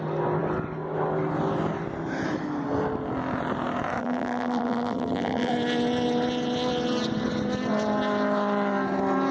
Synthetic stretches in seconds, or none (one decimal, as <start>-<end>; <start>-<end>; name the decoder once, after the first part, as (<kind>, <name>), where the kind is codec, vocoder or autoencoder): 4.0-5.5 (vocoder, BigVGAN v2)